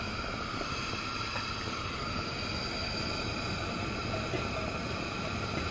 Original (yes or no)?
no